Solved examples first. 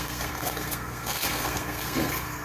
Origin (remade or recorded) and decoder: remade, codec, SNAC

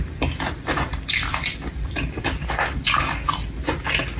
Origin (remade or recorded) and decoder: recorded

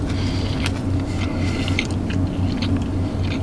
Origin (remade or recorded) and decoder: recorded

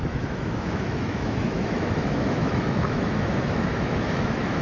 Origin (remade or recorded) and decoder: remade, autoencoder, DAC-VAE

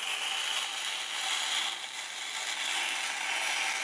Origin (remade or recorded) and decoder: recorded